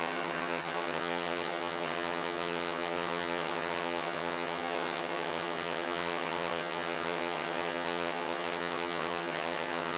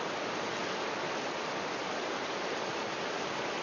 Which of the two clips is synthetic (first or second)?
first